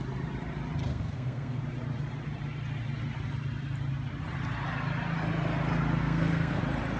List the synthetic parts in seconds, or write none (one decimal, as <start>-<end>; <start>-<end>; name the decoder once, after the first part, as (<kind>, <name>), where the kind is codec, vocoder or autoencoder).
0.9-1.6 (codec, SNAC); 6.0-6.6